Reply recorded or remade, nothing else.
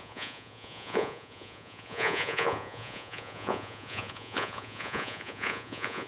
remade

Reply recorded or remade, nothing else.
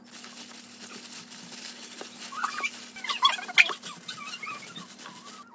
recorded